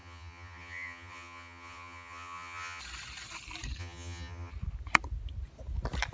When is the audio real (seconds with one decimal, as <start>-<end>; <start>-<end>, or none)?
2.8-3.8; 4.5-6.1